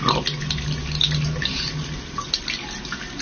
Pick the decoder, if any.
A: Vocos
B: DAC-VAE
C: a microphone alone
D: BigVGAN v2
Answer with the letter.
C